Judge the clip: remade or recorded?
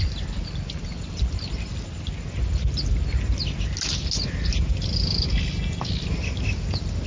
recorded